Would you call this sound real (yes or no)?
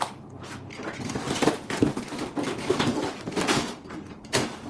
yes